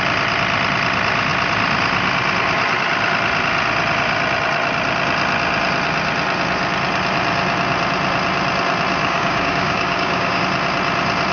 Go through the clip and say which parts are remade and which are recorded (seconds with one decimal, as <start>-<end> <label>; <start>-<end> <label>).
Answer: 0.0-9.0 recorded; 9.0-10.4 remade; 10.4-11.3 recorded